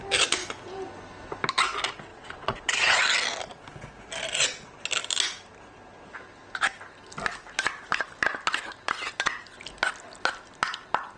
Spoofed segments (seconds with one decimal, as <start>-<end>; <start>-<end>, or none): 2.1-3.0